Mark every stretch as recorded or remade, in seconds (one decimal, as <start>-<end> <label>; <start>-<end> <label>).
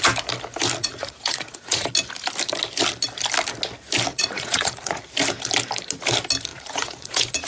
0.0-0.8 recorded; 0.8-1.9 remade; 1.9-4.1 recorded; 4.1-5.0 remade; 5.0-6.5 recorded; 6.5-7.5 remade